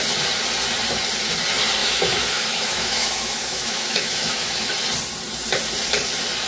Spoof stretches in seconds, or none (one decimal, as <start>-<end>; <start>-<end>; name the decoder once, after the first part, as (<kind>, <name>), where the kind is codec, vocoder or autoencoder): 1.8-4.7 (autoencoder, DAC-VAE)